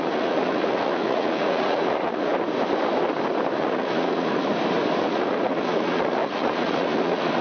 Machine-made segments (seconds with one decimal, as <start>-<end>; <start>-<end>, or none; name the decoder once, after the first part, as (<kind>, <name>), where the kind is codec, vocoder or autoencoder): 0.0-2.3 (vocoder, Vocos); 3.5-4.5; 5.0-7.4